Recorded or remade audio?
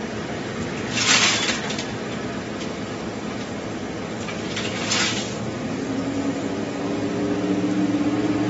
recorded